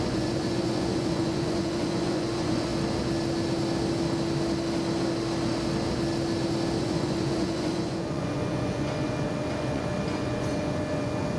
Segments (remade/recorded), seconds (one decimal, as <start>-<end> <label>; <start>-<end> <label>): 0.0-2.7 remade; 2.7-6.8 recorded; 6.8-11.4 remade